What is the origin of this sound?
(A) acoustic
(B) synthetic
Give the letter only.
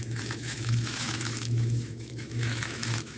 B